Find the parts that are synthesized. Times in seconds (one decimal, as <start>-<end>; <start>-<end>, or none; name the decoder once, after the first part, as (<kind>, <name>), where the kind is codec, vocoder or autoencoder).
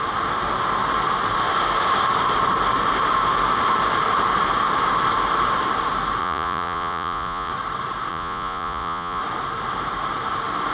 6.2-7.5 (vocoder, Vocos); 8.1-9.2